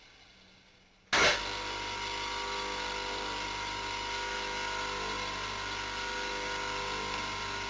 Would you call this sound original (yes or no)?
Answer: yes